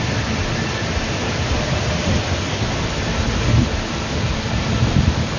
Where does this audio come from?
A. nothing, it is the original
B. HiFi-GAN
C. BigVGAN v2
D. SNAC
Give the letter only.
A